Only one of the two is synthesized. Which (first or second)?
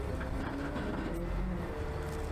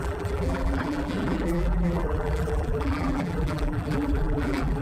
second